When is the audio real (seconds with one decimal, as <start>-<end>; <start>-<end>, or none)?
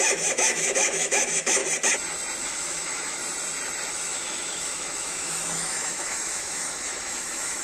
1.6-2.4; 3.2-3.9